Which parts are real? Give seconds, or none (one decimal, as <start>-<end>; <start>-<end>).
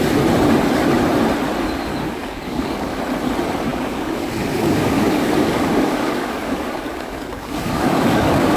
0.0-1.9; 3.0-3.7